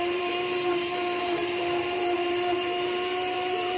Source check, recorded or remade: remade